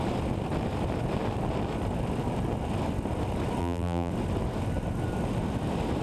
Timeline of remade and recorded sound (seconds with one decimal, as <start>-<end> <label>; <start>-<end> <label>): 0.0-3.6 recorded; 3.6-4.1 remade; 4.1-6.0 recorded